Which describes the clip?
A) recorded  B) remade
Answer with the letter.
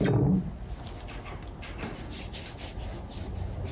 A